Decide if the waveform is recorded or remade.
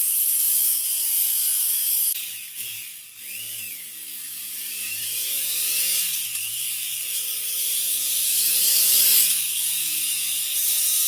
remade